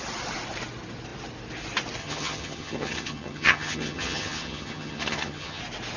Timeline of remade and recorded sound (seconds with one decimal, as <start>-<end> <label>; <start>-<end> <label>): 0.0-2.0 recorded; 2.0-5.6 remade; 5.6-6.0 recorded